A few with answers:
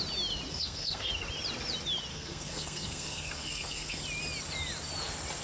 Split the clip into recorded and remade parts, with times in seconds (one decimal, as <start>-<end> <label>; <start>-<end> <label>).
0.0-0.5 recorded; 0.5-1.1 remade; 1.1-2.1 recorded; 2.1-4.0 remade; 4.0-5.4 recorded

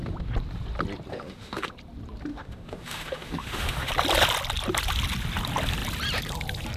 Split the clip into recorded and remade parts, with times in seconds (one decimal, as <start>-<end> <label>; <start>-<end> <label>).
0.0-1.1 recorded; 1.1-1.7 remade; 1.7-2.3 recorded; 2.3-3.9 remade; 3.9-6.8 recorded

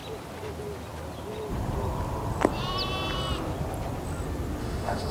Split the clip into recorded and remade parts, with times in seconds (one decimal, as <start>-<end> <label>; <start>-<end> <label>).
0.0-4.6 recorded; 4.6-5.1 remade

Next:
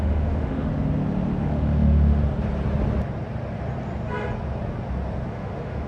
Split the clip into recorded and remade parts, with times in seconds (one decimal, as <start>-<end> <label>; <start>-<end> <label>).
0.0-0.7 remade; 0.7-1.4 recorded; 1.4-2.2 remade; 2.2-5.3 recorded; 5.3-5.9 remade

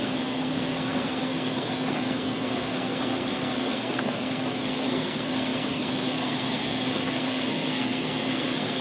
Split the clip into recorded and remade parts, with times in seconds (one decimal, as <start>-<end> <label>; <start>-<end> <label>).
0.0-8.8 remade

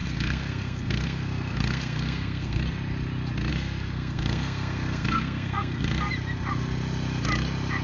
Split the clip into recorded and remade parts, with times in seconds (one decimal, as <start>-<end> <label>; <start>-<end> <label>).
0.0-2.6 remade; 2.6-3.5 recorded; 3.5-6.1 remade; 6.1-7.8 recorded

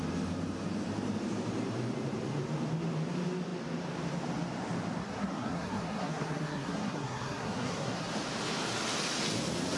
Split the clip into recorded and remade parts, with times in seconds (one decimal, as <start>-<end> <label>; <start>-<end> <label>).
0.0-5.0 recorded; 5.0-8.1 remade; 8.1-9.8 recorded

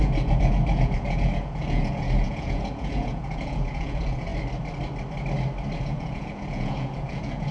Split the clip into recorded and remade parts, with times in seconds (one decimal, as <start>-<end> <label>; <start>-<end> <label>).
0.0-4.3 remade; 4.3-5.8 recorded; 5.8-7.5 remade